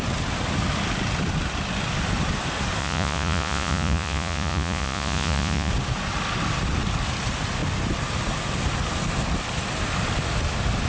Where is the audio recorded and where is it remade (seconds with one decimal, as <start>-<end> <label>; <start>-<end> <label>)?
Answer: 0.0-2.8 recorded; 2.8-5.7 remade; 5.7-10.9 recorded